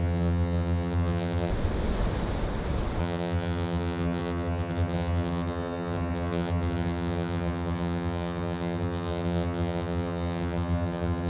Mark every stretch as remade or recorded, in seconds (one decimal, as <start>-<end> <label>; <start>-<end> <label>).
0.0-1.5 remade; 1.5-3.0 recorded; 3.0-11.3 remade